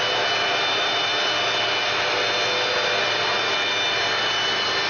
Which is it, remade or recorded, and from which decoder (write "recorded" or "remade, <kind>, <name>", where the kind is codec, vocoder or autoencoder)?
recorded